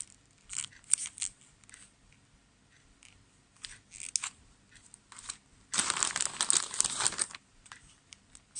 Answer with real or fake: real